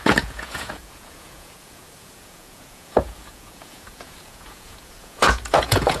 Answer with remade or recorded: remade